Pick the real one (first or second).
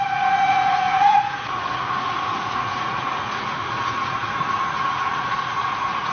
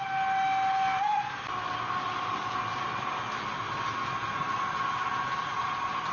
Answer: second